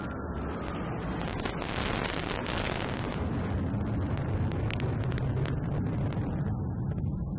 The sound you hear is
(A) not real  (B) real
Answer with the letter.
A